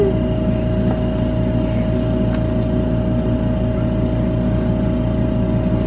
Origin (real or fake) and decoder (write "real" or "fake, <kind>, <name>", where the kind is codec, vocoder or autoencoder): real